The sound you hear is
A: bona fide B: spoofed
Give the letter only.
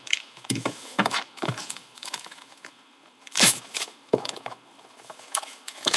B